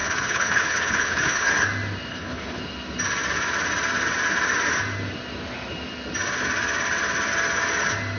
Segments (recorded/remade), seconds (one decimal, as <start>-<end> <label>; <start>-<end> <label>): 0.0-1.5 remade; 1.5-2.1 recorded; 2.1-2.6 remade; 2.6-8.2 recorded